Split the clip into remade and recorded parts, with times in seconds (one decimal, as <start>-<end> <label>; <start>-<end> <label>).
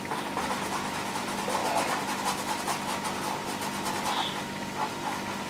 0.0-5.5 recorded